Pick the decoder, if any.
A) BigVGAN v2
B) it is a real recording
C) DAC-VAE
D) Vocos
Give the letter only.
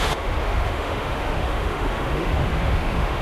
C